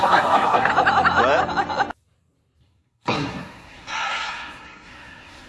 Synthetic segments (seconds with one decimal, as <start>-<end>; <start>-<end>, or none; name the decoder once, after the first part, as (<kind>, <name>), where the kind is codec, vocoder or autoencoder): 0.0-0.7 (codec, SNAC); 2.6-5.5